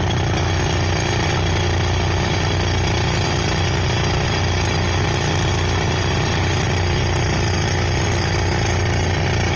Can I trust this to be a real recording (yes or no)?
yes